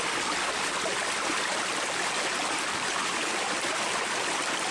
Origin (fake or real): real